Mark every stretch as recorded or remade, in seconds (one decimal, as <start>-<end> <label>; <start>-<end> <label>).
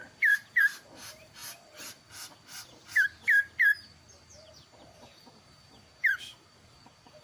0.0-1.4 remade; 1.4-5.0 recorded; 5.0-7.2 remade